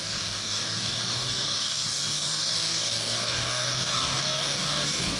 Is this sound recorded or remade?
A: remade